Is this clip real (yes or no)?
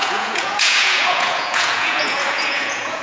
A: no